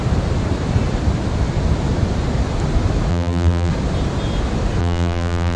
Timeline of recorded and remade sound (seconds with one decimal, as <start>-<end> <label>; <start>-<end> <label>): 0.0-3.1 recorded; 3.1-3.7 remade; 3.7-4.8 recorded; 4.8-5.6 remade